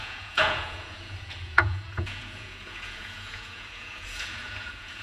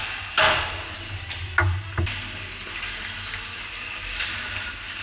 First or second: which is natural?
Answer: second